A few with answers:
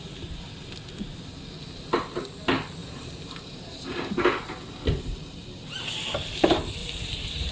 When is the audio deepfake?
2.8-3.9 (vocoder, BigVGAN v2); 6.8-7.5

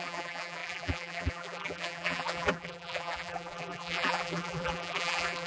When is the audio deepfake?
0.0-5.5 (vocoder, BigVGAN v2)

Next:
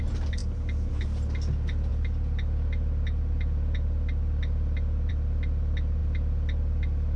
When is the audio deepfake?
none